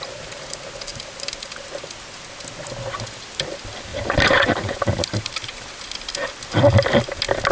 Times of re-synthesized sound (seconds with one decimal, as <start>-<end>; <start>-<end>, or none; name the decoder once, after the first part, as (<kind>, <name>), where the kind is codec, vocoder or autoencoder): 3.9-5.7 (vocoder, BigVGAN v2)